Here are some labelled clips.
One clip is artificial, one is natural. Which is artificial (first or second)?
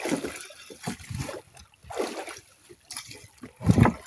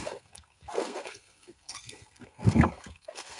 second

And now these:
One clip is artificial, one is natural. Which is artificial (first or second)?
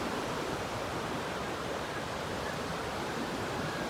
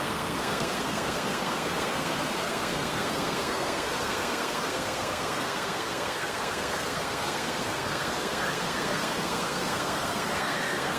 second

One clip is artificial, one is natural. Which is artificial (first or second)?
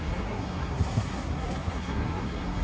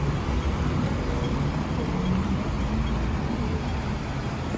first